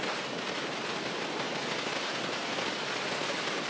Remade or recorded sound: recorded